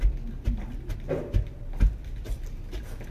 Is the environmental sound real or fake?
real